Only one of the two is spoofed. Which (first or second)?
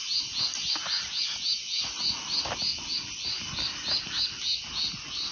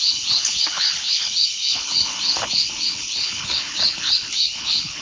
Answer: second